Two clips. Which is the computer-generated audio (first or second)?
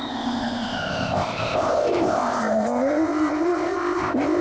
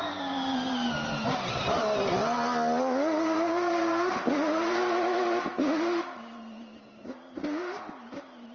first